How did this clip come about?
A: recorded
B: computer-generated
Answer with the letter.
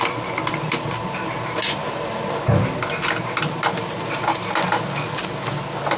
A